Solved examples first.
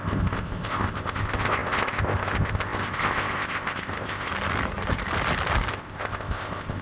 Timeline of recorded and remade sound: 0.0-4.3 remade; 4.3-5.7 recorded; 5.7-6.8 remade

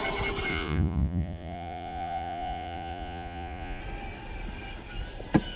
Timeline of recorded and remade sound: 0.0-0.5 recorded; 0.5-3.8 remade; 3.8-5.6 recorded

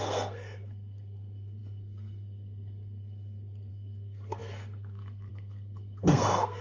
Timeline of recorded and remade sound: 0.0-6.6 remade